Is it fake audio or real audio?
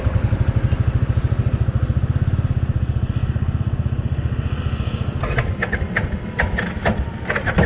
real